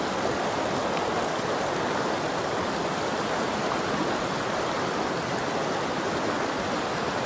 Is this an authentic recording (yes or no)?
yes